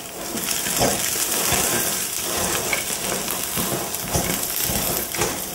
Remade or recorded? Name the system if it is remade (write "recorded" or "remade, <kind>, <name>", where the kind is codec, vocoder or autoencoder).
remade, vocoder, BigVGAN v2